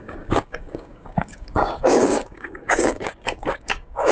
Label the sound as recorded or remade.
remade